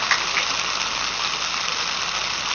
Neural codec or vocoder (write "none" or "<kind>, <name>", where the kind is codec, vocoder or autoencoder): none